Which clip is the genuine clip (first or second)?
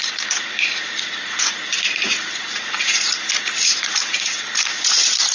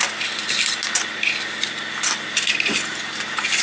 second